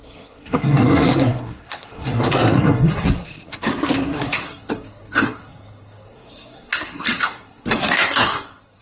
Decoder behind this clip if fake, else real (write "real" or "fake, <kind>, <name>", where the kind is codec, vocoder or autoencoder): fake, codec, SNAC